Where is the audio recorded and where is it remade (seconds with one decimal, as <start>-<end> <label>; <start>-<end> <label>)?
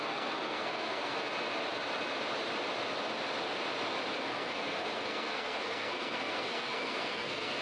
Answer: 0.0-1.1 remade; 1.1-4.1 recorded; 4.1-7.6 remade